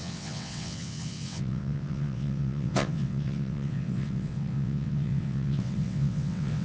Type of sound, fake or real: fake